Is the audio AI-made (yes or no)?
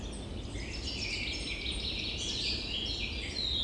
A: no